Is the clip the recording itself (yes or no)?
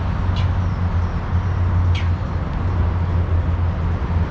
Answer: yes